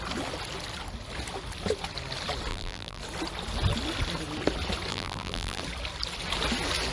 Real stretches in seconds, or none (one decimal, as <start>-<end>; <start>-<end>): 0.0-2.5; 3.0-4.9; 5.6-6.9